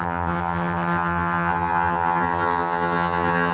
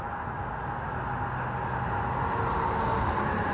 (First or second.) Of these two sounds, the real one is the second